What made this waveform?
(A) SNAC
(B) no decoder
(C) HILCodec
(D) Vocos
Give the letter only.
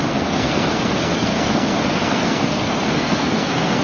A